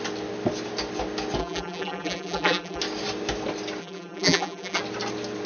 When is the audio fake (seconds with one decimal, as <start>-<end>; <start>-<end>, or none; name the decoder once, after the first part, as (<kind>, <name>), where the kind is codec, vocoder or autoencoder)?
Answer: 1.4-2.8 (vocoder, BigVGAN v2); 3.8-4.8